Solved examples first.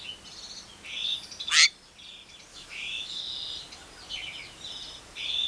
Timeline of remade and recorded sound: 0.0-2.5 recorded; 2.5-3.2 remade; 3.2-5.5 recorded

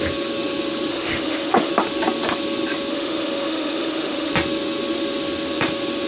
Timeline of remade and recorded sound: 0.0-0.9 recorded; 0.9-1.7 remade; 1.7-2.9 recorded; 2.9-4.3 remade; 4.3-6.1 recorded

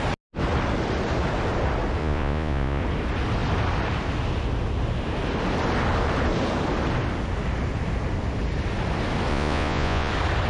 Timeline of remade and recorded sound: 0.0-2.0 recorded; 2.0-2.8 remade; 2.8-9.3 recorded; 9.3-10.1 remade; 10.1-10.5 recorded

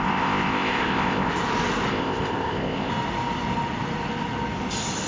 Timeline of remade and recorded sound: 0.0-1.3 remade; 1.3-1.9 recorded; 1.9-2.9 remade; 2.9-5.1 recorded

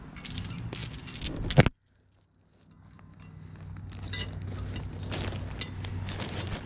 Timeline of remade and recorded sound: 0.0-6.7 recorded

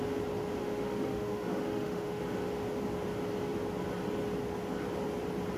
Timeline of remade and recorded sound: 0.0-0.6 recorded; 0.6-2.2 remade; 2.2-5.6 recorded